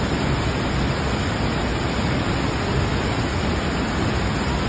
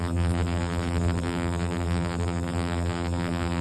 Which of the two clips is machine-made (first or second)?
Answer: second